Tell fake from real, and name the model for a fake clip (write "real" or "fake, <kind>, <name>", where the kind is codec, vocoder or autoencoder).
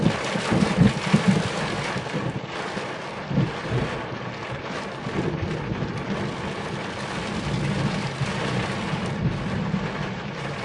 fake, vocoder, BigVGAN v2